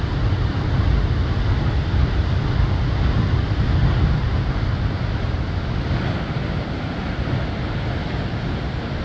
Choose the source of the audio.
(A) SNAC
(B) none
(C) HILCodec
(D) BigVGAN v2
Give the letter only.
B